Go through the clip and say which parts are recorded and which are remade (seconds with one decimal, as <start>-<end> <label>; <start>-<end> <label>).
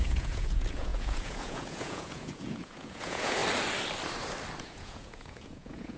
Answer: 0.0-3.4 remade; 3.4-4.6 recorded; 4.6-6.0 remade